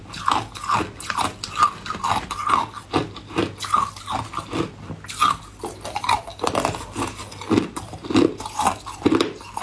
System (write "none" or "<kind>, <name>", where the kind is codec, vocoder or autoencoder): none